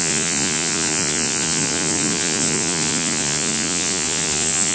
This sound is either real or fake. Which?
fake